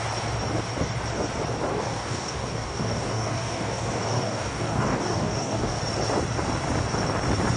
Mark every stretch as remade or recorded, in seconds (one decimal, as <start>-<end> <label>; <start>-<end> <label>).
0.0-1.7 recorded; 1.7-5.8 remade; 5.8-7.6 recorded